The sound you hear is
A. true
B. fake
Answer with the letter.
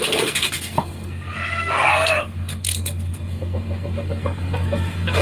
B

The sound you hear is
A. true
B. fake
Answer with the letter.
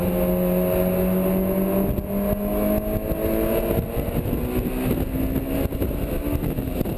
A